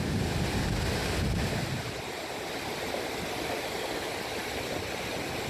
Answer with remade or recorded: recorded